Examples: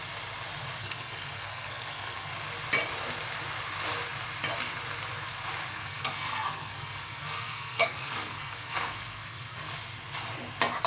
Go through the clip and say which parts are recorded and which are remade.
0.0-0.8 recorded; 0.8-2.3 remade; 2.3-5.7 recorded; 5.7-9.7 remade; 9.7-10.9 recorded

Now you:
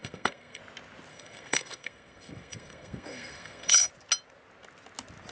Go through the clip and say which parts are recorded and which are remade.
0.0-0.6 remade; 0.6-1.1 recorded; 1.1-3.9 remade; 3.9-5.3 recorded

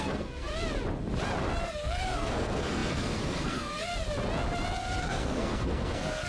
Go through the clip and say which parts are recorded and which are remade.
0.0-0.5 remade; 0.5-1.6 recorded; 1.6-3.9 remade; 3.9-5.0 recorded; 5.0-6.3 remade

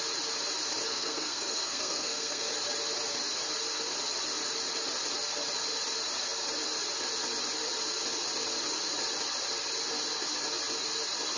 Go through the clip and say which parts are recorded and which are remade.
0.0-0.9 recorded; 0.9-2.5 remade; 2.5-11.4 recorded